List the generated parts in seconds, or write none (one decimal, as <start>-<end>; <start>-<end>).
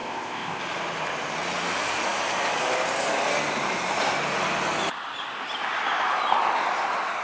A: 0.0-0.6